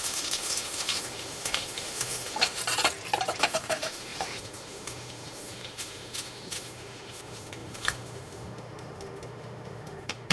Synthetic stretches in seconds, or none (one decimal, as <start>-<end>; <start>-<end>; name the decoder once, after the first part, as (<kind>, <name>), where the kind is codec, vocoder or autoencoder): 0.0-2.6 (autoencoder, DAC-VAE); 3.4-10.3